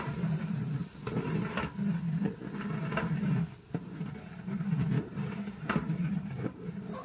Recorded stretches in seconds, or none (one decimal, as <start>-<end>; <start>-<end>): 0.8-5.0